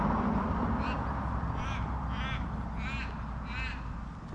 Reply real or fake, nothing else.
real